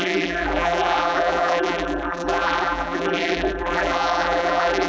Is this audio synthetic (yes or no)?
yes